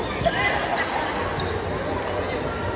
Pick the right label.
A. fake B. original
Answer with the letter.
B